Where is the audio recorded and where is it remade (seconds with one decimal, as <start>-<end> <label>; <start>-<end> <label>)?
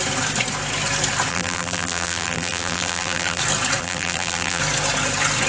0.0-1.3 recorded; 1.3-3.4 remade; 3.4-3.8 recorded; 3.8-4.6 remade; 4.6-5.5 recorded